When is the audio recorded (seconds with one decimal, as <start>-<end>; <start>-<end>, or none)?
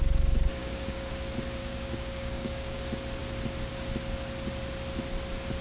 0.0-0.6; 1.1-1.6; 2.8-5.6